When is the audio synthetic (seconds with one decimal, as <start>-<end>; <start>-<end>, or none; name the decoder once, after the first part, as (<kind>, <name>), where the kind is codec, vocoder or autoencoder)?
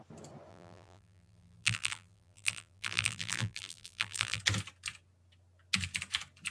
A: 0.5-4.4 (vocoder, BigVGAN v2)